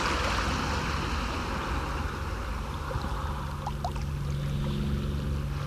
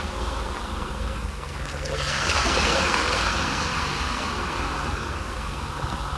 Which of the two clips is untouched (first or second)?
first